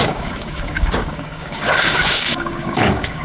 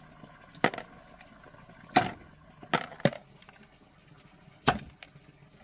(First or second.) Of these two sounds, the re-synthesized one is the first